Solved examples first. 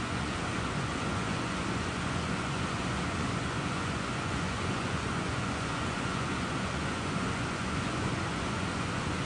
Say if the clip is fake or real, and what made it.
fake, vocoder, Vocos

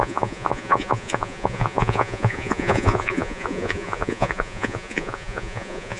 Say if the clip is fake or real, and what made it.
fake, vocoder, Vocos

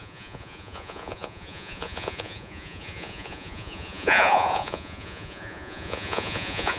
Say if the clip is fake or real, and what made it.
fake, vocoder, Vocos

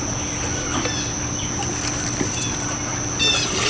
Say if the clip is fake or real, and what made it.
real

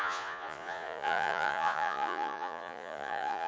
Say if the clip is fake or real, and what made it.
fake, vocoder, Vocos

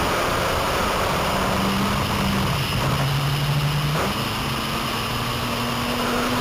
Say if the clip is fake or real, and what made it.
real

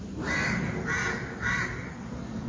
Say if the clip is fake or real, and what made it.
real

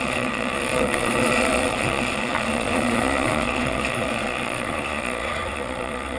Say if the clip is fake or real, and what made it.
fake, vocoder, Vocos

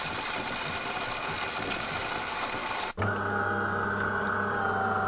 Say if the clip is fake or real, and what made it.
real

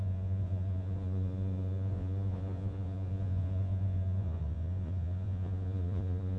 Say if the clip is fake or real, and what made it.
fake, vocoder, Vocos